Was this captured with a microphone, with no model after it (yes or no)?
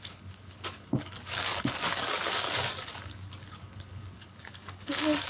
no